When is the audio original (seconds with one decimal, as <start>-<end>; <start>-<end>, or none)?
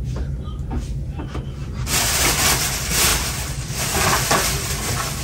0.0-1.6; 2.2-3.1; 4.7-5.2